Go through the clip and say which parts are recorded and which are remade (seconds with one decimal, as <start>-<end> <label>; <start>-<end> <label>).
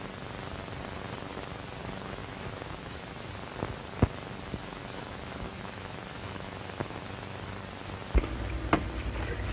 0.0-2.2 recorded; 2.2-3.3 remade; 3.3-4.8 recorded; 4.8-7.0 remade; 7.0-9.5 recorded